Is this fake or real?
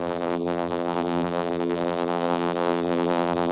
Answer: fake